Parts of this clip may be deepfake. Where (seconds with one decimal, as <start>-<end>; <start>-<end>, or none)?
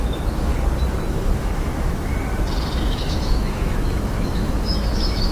0.0-0.5; 1.1-2.1; 2.8-5.3